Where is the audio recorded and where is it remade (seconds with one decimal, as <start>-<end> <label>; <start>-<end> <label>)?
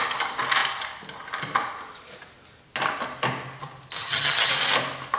0.0-4.0 recorded; 4.0-4.5 remade; 4.5-5.2 recorded